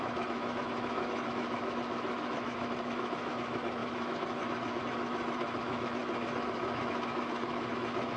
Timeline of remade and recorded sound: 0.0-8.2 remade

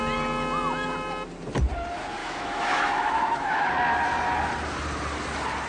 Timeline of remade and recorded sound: 0.0-2.2 recorded; 2.2-3.7 remade; 3.7-5.7 recorded

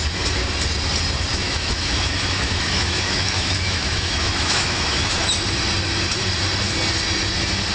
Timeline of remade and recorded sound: 0.0-1.3 recorded; 1.3-5.3 remade; 5.3-7.7 recorded

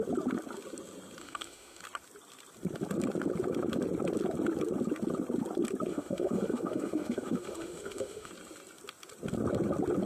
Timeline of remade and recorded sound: 0.0-1.2 recorded; 1.2-1.8 remade; 1.8-5.9 recorded; 5.9-8.3 remade; 8.3-10.1 recorded